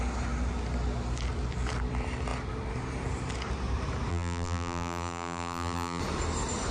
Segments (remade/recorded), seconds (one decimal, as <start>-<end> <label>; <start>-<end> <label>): 0.0-4.1 recorded; 4.1-6.0 remade; 6.0-6.7 recorded